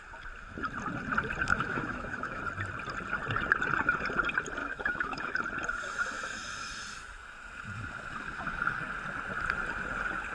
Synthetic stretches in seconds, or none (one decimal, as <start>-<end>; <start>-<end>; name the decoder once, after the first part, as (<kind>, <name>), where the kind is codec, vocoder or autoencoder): 1.5-2.4 (autoencoder, DAC-VAE); 4.6-5.3

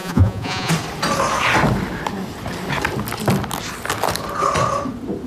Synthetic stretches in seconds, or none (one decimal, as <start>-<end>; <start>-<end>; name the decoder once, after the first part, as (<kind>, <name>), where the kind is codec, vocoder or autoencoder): 0.0-0.7 (vocoder, Vocos)